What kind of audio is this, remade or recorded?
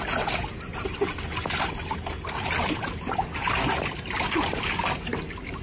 recorded